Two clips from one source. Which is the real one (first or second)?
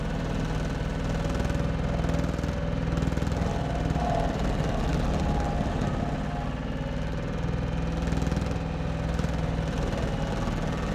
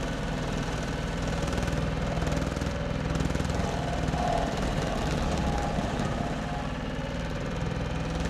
first